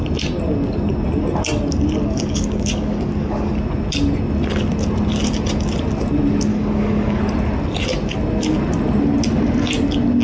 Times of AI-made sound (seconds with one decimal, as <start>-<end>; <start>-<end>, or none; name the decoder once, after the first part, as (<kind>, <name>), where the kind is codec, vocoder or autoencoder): 2.0-3.5 (codec, DAC); 6.5-7.2